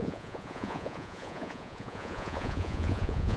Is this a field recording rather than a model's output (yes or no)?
no